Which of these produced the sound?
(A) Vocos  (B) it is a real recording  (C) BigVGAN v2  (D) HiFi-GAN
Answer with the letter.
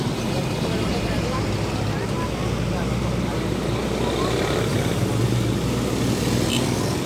B